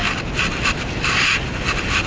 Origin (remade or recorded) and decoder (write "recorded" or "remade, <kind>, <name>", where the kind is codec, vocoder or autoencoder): recorded